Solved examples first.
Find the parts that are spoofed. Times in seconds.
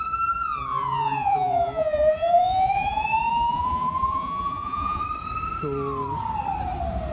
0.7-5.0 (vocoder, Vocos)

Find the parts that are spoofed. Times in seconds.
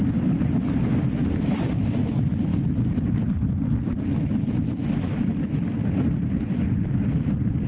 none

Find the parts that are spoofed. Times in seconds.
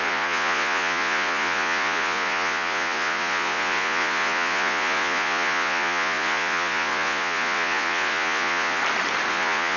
0.0-8.8 (vocoder, Vocos); 9.3-9.8